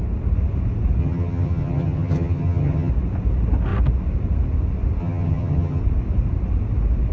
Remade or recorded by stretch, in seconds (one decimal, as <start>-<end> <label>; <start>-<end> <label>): 0.0-1.0 recorded; 1.0-2.9 remade; 2.9-5.0 recorded; 5.0-5.8 remade; 5.8-7.1 recorded